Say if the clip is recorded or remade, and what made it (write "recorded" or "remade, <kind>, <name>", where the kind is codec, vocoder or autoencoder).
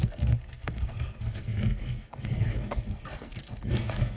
remade, codec, SNAC